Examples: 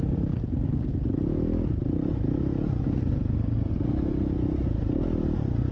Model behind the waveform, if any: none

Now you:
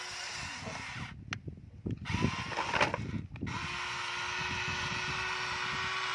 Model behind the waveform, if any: none